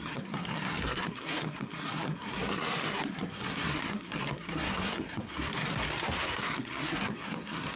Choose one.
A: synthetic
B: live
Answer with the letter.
A